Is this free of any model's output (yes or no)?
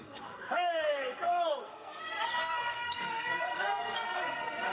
no